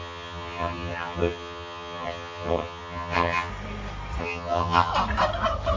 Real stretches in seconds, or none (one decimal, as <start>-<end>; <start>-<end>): 3.5-4.2; 4.9-5.8